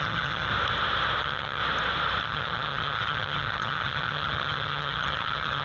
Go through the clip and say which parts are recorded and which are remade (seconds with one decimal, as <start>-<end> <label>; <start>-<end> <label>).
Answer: 0.0-0.5 remade; 0.5-1.2 recorded; 1.2-1.6 remade; 1.6-2.2 recorded; 2.2-5.6 remade